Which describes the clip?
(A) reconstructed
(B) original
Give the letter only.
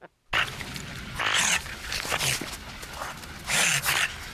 B